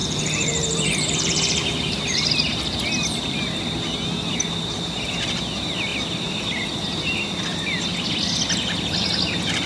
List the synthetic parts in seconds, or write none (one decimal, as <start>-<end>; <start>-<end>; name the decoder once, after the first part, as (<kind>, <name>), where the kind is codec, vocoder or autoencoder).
0.0-2.3 (vocoder, BigVGAN v2)